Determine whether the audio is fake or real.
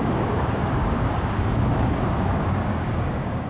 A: fake